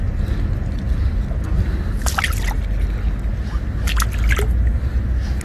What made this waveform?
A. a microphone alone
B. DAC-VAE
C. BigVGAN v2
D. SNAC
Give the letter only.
A